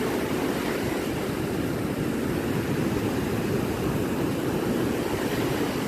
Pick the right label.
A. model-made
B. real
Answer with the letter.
B